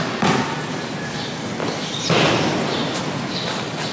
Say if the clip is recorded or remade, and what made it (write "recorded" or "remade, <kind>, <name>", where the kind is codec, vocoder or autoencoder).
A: recorded